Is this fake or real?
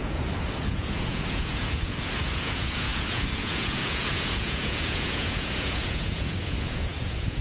fake